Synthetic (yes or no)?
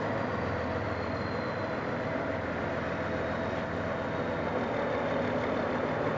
no